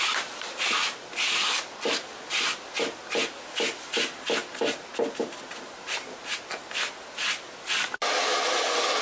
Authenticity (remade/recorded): recorded